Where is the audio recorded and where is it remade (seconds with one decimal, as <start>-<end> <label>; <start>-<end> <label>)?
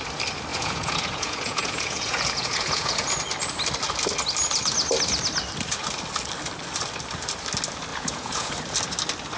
0.0-0.5 recorded; 0.5-3.2 remade; 3.2-7.9 recorded; 7.9-8.5 remade; 8.5-9.4 recorded